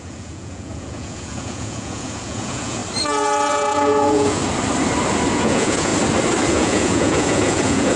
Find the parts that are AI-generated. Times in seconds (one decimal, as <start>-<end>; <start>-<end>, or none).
0.0-2.8; 3.5-4.4; 5.3-5.9; 6.5-8.0